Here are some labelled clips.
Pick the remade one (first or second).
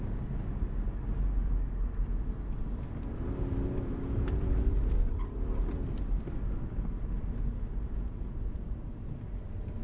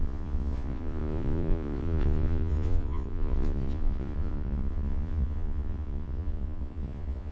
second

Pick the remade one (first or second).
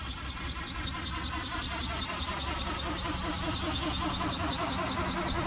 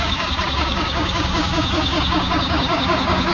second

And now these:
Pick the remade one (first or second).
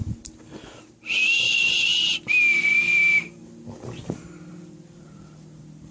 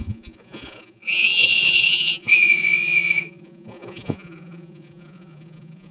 second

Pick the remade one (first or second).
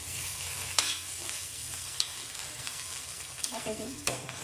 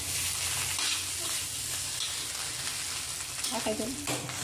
first